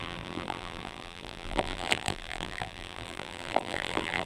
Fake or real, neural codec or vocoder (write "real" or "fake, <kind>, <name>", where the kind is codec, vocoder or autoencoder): fake, vocoder, BigVGAN v2